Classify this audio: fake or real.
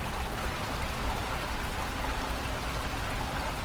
real